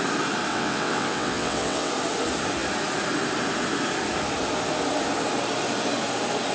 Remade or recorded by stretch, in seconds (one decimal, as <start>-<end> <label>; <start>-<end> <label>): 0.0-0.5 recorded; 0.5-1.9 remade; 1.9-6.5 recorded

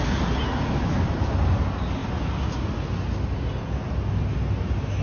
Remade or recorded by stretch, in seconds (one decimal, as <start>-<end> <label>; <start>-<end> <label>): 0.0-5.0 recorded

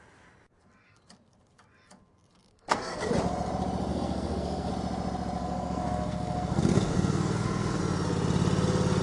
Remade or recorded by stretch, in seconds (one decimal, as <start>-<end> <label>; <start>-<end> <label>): 0.0-2.5 recorded; 2.5-3.1 remade; 3.1-3.9 recorded; 3.9-4.7 remade; 4.7-5.4 recorded; 5.4-7.8 remade; 7.8-9.0 recorded

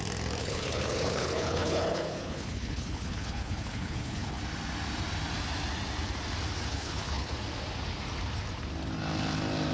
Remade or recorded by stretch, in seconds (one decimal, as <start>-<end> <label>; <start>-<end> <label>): 0.0-0.4 recorded; 0.4-4.4 remade; 4.4-6.7 recorded; 6.7-7.3 remade; 7.3-9.7 recorded

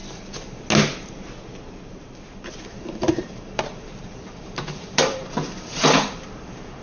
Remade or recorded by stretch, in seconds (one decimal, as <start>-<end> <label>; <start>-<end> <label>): 0.0-0.6 remade; 0.6-2.7 recorded; 2.7-6.8 remade

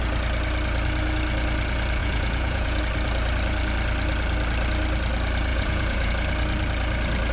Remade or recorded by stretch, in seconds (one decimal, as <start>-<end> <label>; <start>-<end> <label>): 0.0-2.0 recorded; 2.0-2.8 remade; 2.8-5.5 recorded; 5.5-6.1 remade; 6.1-7.3 recorded

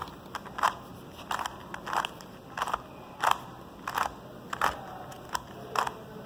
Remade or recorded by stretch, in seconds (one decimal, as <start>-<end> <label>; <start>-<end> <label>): 0.0-6.3 recorded